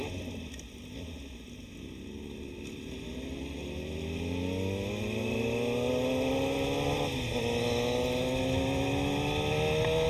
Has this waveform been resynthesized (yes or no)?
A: no